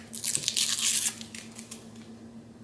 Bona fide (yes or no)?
yes